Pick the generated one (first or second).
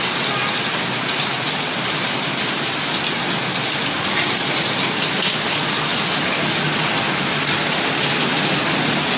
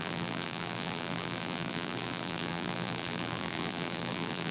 second